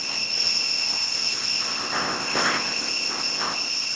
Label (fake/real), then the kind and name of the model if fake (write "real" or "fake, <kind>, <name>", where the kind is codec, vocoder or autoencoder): fake, codec, ZipCodec